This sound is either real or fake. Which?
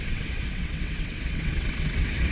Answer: fake